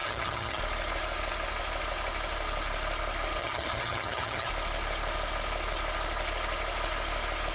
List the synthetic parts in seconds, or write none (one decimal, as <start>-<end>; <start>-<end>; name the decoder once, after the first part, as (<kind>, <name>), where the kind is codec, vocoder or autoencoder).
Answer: 0.0-0.6 (vocoder, HiFi-GAN); 3.4-4.5

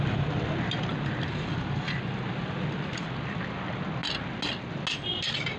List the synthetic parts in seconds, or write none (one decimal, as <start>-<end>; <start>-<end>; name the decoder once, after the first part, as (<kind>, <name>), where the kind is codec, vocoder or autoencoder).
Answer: none

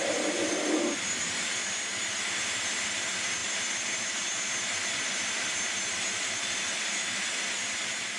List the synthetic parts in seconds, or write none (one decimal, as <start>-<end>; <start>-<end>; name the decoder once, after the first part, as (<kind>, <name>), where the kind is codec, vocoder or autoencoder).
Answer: none

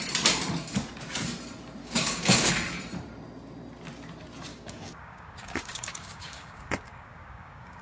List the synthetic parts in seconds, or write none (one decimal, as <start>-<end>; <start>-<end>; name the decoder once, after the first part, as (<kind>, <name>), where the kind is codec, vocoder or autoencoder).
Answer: 1.8-2.5 (codec, DAC); 4.5-7.8